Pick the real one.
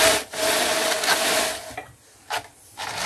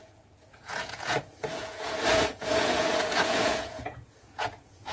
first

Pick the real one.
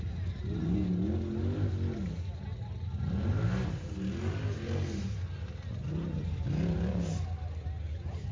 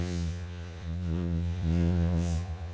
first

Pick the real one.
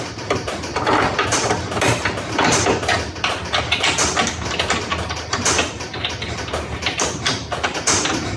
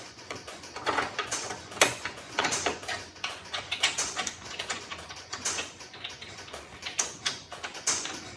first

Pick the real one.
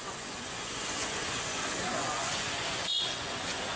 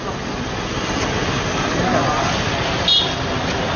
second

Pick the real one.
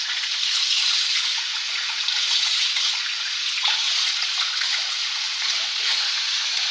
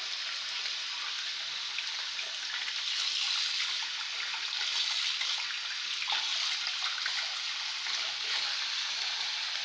second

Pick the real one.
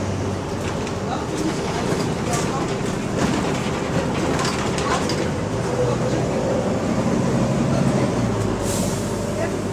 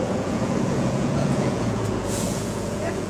first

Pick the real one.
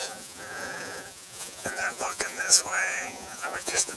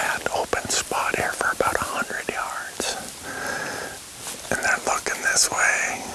second